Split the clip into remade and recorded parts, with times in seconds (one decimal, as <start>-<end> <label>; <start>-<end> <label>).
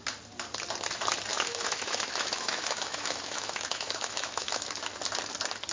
0.0-1.3 recorded; 1.3-4.7 remade; 4.7-5.7 recorded